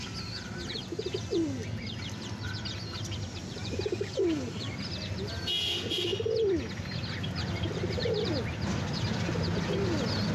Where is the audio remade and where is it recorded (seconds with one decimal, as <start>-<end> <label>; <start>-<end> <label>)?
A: 0.0-1.6 recorded; 1.6-5.3 remade; 5.3-10.3 recorded